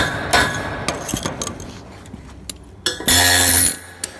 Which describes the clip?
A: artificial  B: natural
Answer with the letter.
B